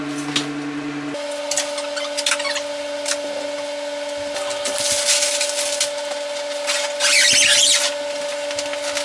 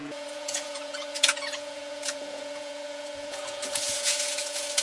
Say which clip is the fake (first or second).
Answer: second